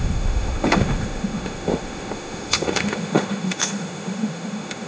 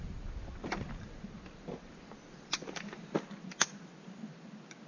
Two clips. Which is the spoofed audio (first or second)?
first